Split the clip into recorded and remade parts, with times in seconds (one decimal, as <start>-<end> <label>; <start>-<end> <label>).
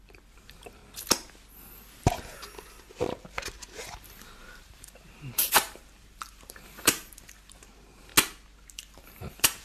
0.0-0.8 remade; 0.8-2.8 recorded; 2.8-8.1 remade; 8.1-8.7 recorded; 8.7-9.6 remade